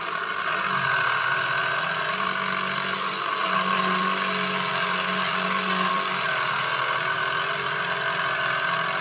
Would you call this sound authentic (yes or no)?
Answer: yes